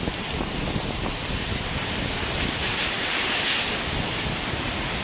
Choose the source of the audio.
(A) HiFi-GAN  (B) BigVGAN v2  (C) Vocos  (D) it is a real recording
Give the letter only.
D